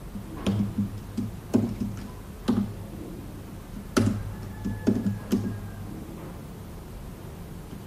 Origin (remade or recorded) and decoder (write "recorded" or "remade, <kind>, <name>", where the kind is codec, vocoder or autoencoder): recorded